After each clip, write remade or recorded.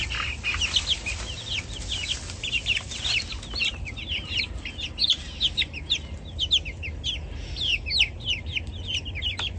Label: recorded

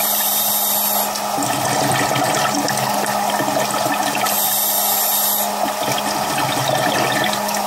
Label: recorded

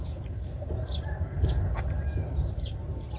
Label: recorded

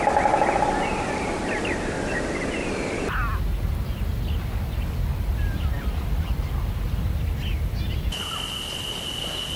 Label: recorded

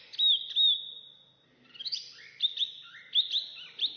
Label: recorded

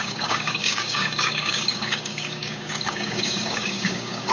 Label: remade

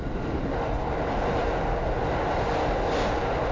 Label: recorded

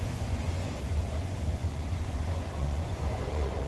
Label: remade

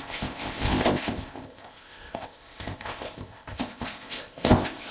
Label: remade